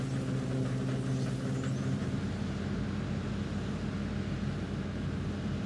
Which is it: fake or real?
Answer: real